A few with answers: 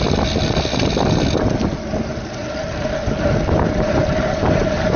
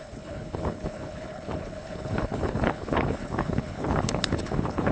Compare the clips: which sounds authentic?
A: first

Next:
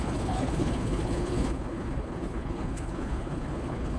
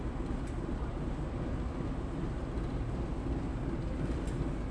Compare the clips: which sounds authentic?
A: second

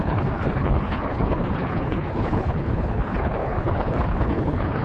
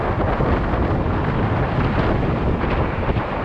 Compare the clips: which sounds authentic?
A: second